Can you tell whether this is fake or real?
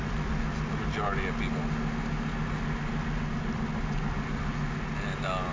real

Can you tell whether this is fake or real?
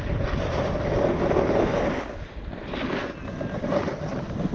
real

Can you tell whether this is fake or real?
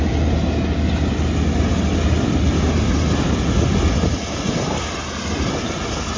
real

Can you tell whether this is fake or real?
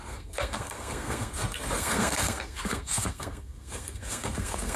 fake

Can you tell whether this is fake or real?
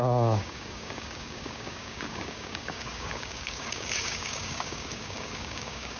fake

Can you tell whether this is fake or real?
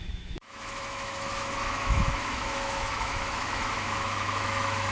fake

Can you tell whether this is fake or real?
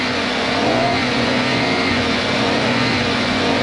fake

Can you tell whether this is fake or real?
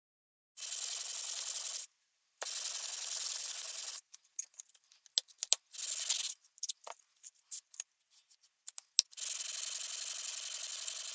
real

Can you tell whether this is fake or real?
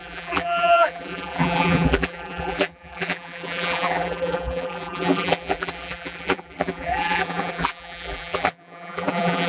fake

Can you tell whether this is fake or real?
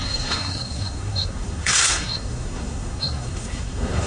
fake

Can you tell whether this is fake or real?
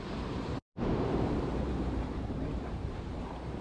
fake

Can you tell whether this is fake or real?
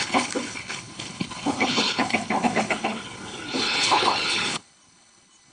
fake